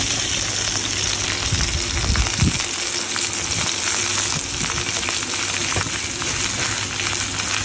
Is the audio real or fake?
real